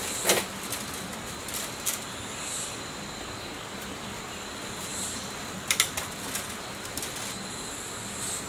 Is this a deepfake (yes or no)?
no